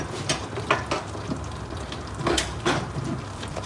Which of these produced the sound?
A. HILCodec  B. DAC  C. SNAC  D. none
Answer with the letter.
D